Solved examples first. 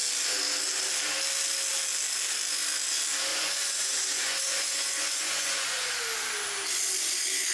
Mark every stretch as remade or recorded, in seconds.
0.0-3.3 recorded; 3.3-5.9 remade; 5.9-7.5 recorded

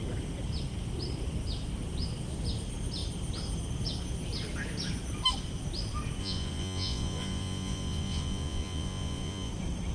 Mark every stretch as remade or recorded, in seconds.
0.0-6.2 recorded; 6.2-9.5 remade; 9.5-9.9 recorded